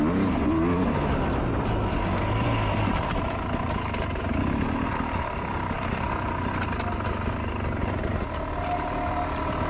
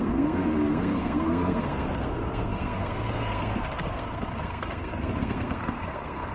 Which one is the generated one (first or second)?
second